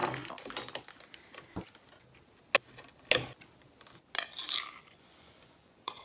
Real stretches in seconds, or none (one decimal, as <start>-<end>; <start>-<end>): 0.0-4.8